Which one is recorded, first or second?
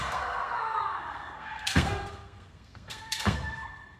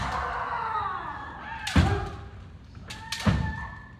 second